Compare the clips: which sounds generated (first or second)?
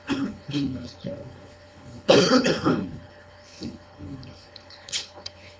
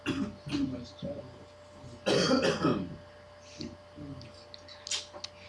first